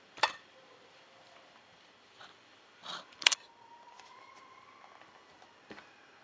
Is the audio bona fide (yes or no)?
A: no